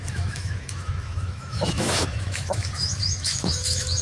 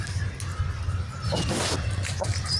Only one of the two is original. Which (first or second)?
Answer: second